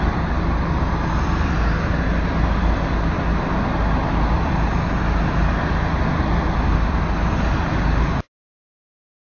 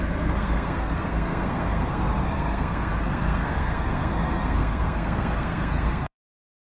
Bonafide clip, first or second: first